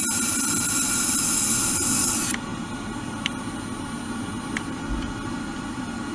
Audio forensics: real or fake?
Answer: real